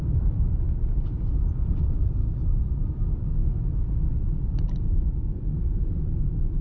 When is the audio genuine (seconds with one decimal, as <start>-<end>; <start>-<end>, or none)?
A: none